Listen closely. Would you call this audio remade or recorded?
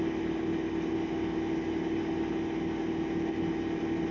recorded